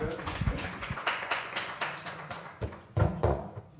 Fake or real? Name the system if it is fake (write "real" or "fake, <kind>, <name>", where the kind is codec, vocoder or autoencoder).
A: fake, vocoder, Vocos